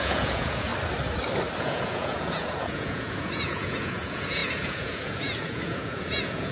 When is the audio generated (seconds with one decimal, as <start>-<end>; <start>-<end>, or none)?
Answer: 0.0-0.7; 1.6-6.5